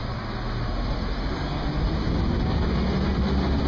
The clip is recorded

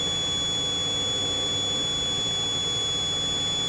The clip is recorded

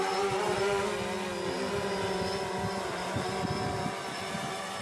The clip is recorded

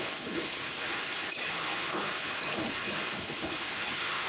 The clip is remade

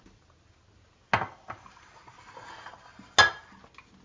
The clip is recorded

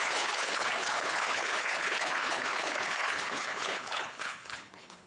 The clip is remade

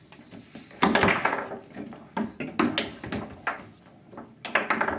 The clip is recorded